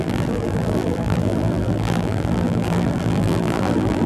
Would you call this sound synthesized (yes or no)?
yes